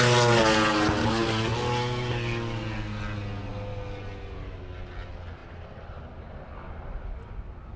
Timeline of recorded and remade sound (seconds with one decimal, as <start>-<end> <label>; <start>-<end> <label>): 0.0-7.8 recorded